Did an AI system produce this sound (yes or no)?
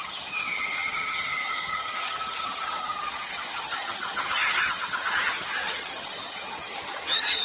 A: yes